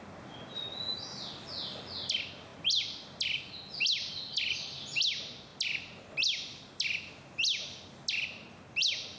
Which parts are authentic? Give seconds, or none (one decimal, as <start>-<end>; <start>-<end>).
0.0-9.2